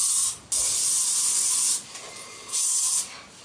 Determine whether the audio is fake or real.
real